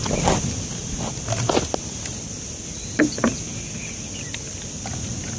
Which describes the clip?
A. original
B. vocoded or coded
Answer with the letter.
A